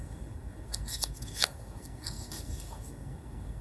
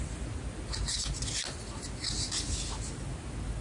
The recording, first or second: second